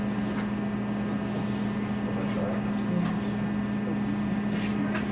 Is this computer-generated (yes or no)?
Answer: no